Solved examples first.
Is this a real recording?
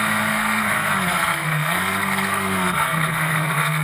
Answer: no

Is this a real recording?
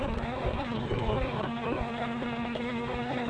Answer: no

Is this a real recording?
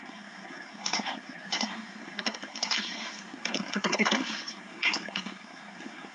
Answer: no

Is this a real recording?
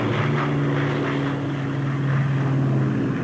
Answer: yes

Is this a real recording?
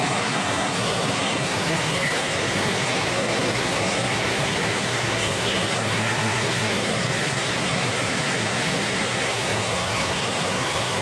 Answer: no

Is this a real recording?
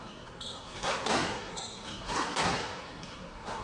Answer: no